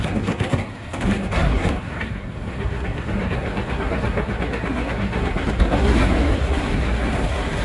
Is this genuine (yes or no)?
no